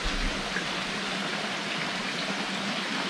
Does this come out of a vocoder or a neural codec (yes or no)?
no